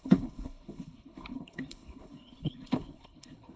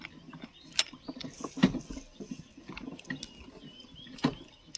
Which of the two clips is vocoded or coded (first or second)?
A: first